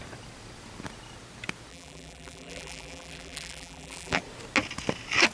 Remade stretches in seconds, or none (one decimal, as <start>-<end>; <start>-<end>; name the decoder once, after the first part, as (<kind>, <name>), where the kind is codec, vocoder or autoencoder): 1.7-4.2 (vocoder, BigVGAN v2)